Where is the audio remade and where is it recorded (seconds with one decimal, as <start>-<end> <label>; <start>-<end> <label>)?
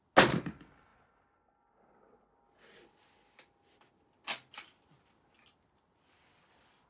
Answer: 0.0-6.9 recorded